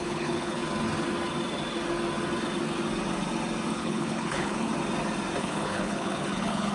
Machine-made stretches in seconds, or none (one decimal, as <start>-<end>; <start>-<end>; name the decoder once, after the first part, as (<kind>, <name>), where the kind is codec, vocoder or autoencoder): 0.0-0.6 (codec, HILCodec); 3.7-4.7; 5.4-6.7